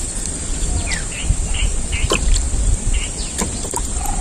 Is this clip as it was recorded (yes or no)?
no